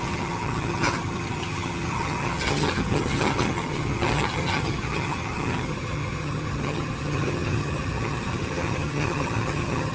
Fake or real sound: fake